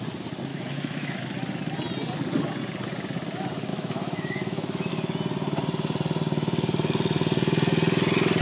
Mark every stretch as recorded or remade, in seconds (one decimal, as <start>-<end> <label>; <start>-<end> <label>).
0.0-0.5 recorded; 0.5-1.2 remade; 1.2-3.7 recorded; 3.7-4.9 remade; 4.9-8.4 recorded